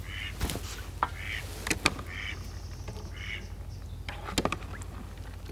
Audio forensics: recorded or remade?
recorded